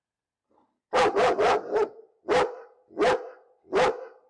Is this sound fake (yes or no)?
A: no